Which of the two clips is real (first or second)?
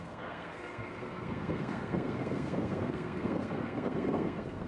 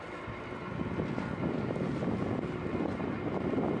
second